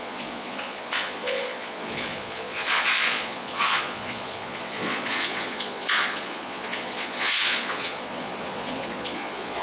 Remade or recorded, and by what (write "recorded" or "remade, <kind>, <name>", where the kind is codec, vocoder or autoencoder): remade, vocoder, Vocos